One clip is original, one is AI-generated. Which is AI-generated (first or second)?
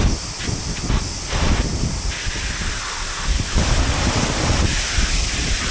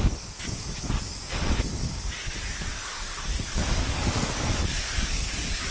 second